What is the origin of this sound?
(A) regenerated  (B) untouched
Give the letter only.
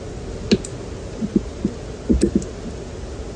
B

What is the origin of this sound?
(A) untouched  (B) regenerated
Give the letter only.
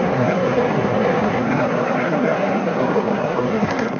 B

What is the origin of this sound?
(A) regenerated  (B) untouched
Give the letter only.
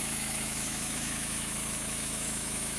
A